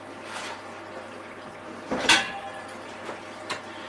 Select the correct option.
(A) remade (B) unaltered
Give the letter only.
B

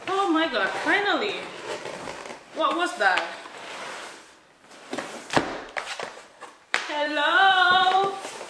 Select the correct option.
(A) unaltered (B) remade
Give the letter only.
B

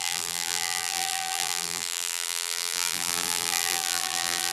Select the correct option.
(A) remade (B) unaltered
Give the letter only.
A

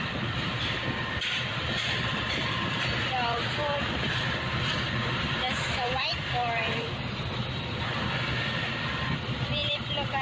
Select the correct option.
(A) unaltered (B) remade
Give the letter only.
B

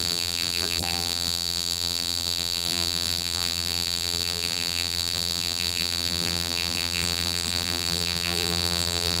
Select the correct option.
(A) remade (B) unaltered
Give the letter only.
A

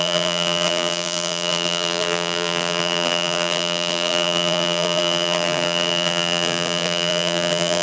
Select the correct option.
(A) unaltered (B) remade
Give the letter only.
B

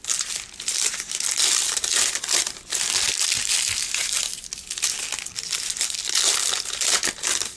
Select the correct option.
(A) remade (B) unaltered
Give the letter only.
A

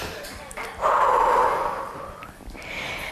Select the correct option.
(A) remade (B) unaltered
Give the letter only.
A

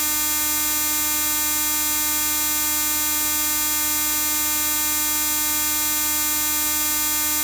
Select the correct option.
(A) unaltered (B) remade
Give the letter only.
A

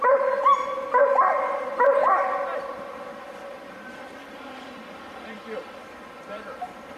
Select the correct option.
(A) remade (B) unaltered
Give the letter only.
A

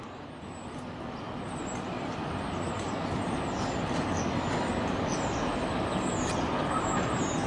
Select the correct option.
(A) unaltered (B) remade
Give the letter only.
A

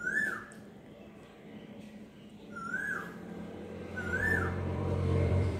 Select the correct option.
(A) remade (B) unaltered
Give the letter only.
A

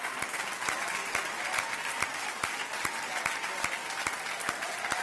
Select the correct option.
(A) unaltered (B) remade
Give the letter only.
A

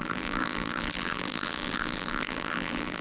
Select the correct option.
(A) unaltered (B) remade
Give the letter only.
B